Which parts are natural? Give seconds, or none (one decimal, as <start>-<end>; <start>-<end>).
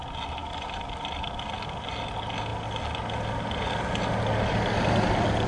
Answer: 0.0-5.5